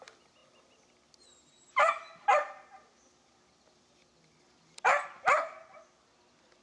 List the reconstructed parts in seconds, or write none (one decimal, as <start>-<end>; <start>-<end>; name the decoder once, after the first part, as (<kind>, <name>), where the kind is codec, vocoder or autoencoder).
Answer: none